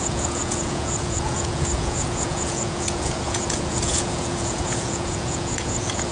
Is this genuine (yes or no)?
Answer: no